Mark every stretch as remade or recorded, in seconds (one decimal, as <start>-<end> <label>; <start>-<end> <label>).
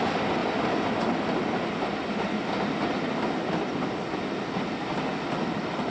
0.0-5.9 recorded